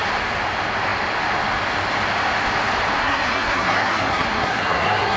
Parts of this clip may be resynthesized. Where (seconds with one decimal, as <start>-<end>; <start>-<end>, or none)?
3.0-5.2